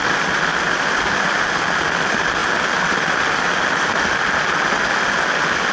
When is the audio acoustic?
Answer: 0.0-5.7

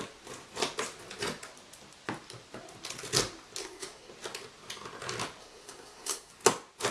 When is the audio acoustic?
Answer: 0.0-3.6; 4.1-5.4; 6.3-6.9